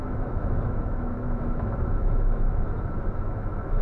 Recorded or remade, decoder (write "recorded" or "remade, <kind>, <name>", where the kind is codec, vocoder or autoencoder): remade, autoencoder, DAC-VAE